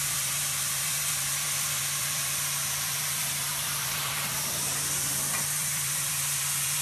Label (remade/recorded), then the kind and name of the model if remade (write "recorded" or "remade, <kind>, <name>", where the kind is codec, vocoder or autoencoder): remade, vocoder, BigVGAN v2